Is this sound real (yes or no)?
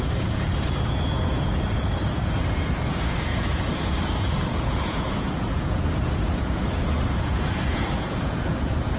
no